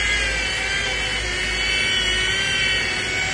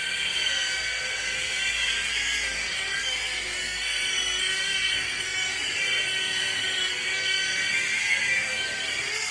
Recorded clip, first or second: first